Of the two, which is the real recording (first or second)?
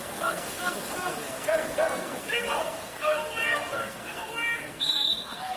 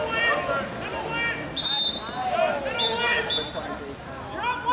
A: second